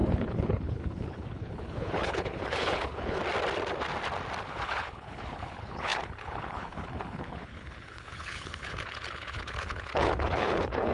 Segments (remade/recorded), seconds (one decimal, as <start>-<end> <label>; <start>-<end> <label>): 0.0-3.2 remade; 3.2-4.4 recorded; 4.4-10.9 remade